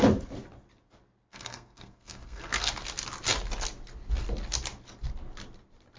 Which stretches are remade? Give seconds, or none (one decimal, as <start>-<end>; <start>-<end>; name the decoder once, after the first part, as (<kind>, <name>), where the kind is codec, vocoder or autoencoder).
1.3-2.7 (codec, SNAC)